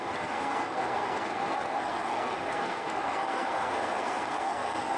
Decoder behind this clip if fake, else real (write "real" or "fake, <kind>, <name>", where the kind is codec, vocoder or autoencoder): fake, codec, SNAC